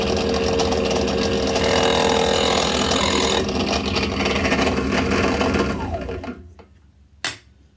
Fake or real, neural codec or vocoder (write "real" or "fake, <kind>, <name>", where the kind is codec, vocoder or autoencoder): real